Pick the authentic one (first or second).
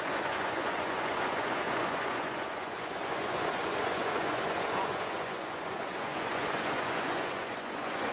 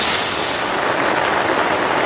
second